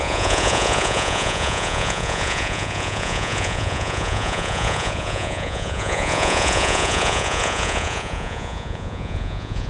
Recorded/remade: remade